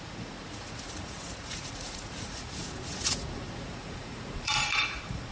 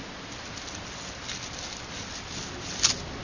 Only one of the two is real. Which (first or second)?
second